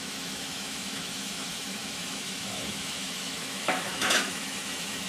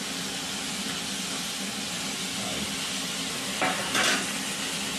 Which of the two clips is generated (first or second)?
first